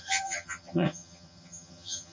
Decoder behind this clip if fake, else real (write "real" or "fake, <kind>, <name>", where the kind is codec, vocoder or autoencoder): fake, vocoder, HiFi-GAN